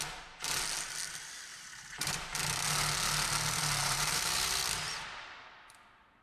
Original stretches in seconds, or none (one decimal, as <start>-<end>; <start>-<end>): 0.0-1.5; 2.1-3.8; 4.6-6.2

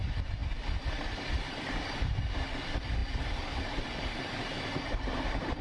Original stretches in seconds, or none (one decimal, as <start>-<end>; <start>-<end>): 0.0-5.6

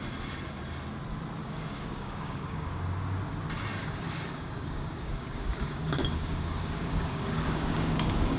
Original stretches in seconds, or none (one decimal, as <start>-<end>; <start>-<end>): 0.0-1.4; 2.7-3.8

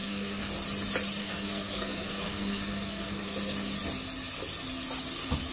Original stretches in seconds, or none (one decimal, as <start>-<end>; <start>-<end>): 0.5-1.2; 3.3-5.5

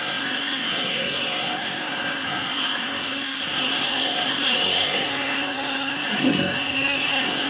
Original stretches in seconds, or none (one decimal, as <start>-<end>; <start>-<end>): none

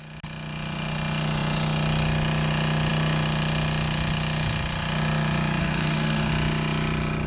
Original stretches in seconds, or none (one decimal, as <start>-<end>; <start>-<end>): 0.0-5.6; 6.3-7.3

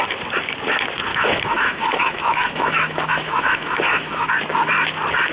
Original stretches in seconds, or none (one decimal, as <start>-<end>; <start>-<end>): 0.0-1.1; 4.3-5.3